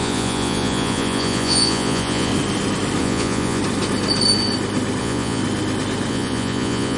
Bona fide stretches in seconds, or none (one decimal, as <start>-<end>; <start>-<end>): 2.3-3.0; 3.6-5.0; 5.4-6.1